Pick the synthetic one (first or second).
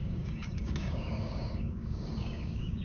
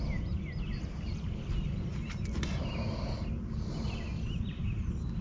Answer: first